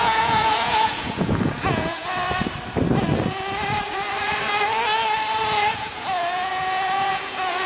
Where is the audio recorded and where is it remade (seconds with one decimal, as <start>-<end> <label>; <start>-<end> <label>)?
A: 0.0-2.2 remade; 2.2-5.7 recorded; 5.7-7.7 remade